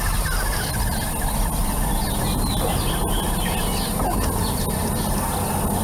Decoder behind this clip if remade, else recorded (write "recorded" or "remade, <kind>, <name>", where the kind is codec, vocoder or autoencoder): recorded